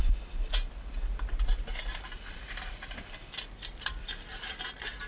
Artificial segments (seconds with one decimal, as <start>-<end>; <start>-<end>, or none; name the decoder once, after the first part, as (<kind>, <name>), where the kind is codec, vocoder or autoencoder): none